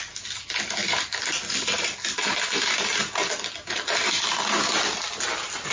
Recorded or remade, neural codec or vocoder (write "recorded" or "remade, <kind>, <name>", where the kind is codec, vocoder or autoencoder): recorded